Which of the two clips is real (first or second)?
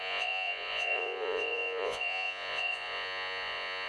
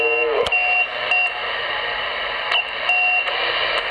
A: second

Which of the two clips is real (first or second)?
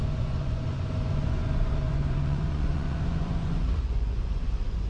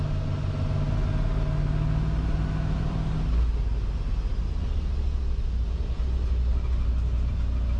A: second